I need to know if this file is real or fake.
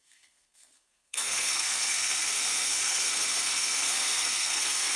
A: fake